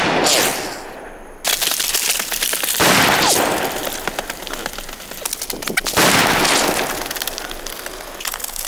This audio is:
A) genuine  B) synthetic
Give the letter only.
A